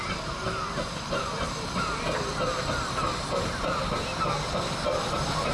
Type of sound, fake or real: real